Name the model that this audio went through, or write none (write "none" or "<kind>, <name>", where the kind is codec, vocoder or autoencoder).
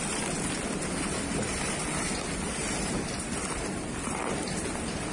vocoder, BigVGAN v2